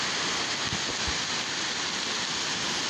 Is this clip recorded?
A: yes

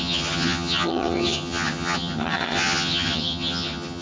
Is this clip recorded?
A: no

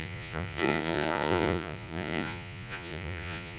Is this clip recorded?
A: no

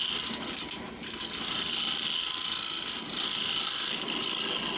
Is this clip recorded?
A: yes